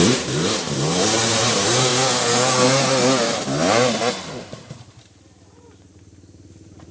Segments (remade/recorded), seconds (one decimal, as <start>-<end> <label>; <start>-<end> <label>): 0.0-1.9 remade; 1.9-4.1 recorded; 4.1-6.9 remade